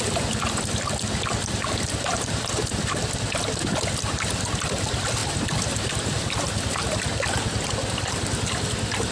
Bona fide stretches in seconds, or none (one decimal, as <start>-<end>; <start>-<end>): 0.0-9.1